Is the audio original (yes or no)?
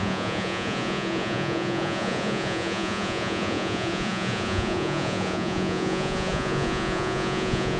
no